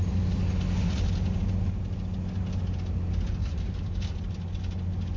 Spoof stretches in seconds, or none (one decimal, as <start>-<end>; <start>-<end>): 3.4-4.2